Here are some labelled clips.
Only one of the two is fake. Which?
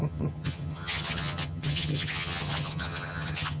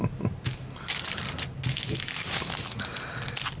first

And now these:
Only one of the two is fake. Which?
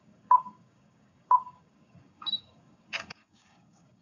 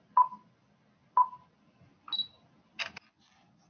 first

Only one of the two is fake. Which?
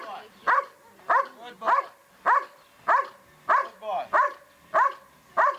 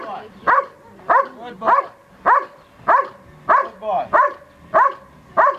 second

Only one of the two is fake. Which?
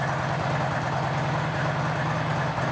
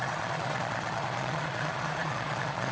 second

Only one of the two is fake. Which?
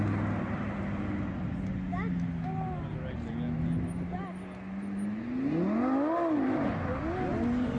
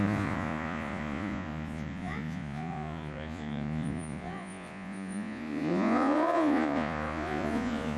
second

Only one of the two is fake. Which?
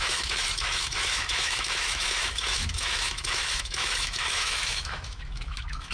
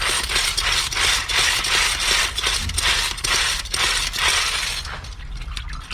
first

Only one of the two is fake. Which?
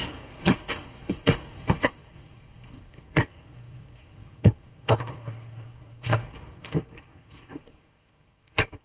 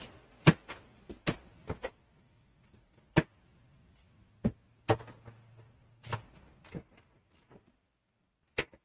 first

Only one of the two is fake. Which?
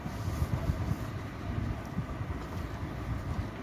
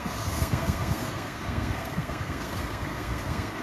second